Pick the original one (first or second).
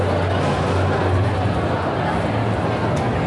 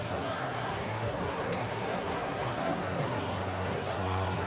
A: first